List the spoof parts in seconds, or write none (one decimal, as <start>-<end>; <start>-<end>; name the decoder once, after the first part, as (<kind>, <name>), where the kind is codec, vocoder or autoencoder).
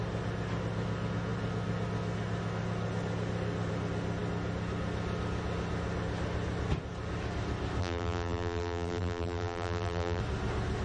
7.8-10.2 (vocoder, BigVGAN v2)